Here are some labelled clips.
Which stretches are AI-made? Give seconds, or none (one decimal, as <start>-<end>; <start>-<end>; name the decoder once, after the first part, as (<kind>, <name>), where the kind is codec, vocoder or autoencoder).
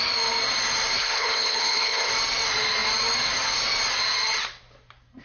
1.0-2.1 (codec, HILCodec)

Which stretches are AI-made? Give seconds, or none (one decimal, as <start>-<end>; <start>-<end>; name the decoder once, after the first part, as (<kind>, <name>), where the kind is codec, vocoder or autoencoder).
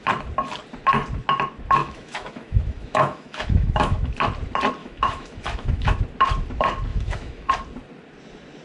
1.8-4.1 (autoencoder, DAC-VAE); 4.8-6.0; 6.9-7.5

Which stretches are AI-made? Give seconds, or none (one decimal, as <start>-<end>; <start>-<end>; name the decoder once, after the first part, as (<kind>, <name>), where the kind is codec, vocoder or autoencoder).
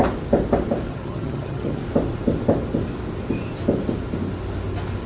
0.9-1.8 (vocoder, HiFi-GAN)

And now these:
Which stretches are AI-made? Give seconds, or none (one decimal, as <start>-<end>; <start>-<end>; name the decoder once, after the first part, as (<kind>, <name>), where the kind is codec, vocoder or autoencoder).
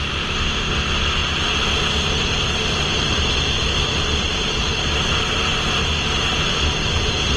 none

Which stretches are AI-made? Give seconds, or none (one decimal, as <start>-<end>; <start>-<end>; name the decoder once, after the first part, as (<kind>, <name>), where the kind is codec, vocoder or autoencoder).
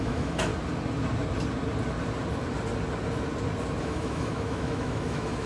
0.0-0.5 (autoencoder, DAC-VAE); 3.8-5.5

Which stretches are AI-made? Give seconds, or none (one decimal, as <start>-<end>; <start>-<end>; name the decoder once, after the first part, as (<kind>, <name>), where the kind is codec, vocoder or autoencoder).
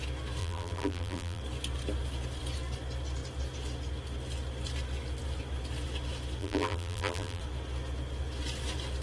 0.4-1.4 (vocoder, BigVGAN v2); 6.4-7.4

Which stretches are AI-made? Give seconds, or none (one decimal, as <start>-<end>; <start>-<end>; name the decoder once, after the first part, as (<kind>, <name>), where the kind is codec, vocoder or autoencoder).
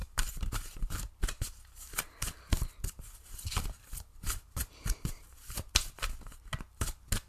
0.0-1.1 (vocoder, BigVGAN v2); 2.5-3.3; 4.1-5.7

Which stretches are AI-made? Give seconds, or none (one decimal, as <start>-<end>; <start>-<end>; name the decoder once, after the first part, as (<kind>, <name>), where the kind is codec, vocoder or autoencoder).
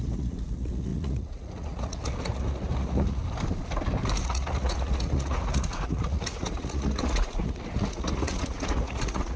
0.0-3.2 (vocoder, Vocos); 4.2-9.4